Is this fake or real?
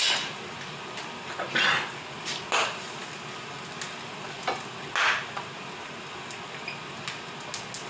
real